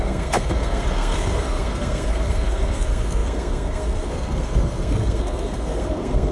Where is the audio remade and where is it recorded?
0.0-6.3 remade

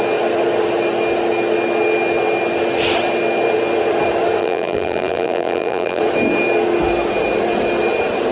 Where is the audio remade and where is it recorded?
0.0-4.4 recorded; 4.4-6.0 remade; 6.0-8.3 recorded

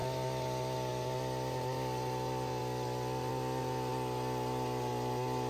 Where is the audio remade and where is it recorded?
0.0-5.5 recorded

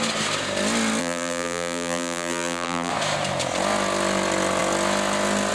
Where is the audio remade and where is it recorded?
0.0-1.0 recorded; 1.0-2.9 remade; 2.9-5.5 recorded

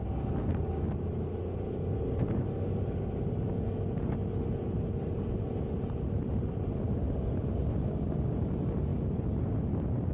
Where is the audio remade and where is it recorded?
0.0-10.1 recorded

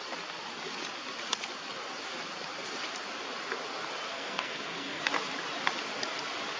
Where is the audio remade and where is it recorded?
0.0-4.1 recorded; 4.1-5.0 remade; 5.0-6.6 recorded